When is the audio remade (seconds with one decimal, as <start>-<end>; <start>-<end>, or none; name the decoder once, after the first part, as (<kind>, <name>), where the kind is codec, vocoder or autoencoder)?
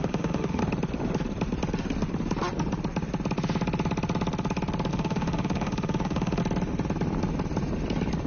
0.0-0.6 (autoencoder, DAC-VAE); 4.9-6.4